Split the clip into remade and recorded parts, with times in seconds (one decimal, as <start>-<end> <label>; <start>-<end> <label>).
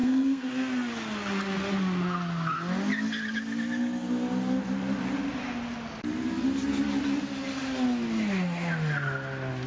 0.0-0.5 remade; 0.5-9.7 recorded